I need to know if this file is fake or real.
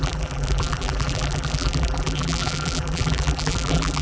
fake